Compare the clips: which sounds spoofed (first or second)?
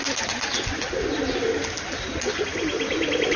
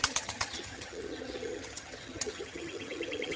second